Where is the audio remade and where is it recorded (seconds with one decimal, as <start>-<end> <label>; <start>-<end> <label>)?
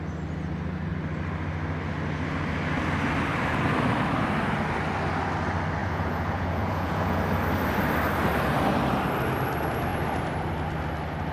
0.0-5.8 recorded; 5.8-7.2 remade; 7.2-11.3 recorded